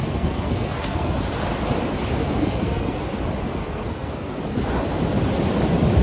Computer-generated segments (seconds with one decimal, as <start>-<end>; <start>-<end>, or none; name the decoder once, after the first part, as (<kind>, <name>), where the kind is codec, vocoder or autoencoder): 0.0-1.1 (codec, SNAC); 2.2-3.0; 3.6-4.4